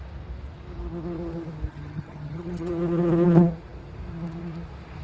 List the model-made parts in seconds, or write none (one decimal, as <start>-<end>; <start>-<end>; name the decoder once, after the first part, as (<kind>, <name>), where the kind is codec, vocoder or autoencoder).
1.7-2.7 (vocoder, HiFi-GAN)